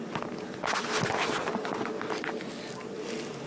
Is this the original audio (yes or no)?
yes